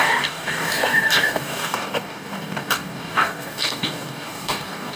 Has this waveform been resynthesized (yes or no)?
yes